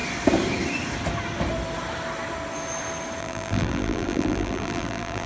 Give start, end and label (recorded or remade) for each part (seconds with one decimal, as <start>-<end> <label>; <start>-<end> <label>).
0.0-3.2 recorded; 3.2-5.3 remade